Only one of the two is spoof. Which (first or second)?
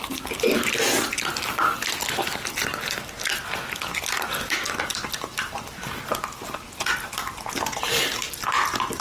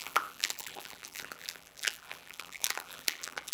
second